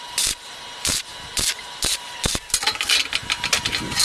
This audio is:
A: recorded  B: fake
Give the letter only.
A